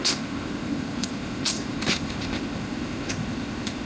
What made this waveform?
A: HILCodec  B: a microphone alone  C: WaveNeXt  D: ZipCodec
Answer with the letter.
D